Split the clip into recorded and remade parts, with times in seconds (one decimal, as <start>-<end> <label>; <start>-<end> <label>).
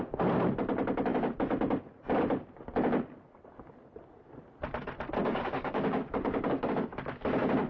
0.0-5.2 recorded; 5.2-7.0 remade; 7.0-7.7 recorded